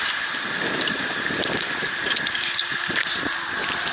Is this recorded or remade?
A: recorded